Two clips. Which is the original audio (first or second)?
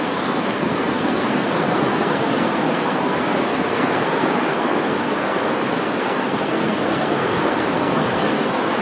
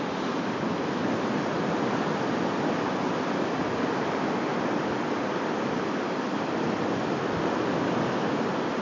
second